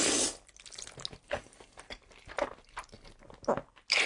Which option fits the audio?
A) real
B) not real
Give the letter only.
A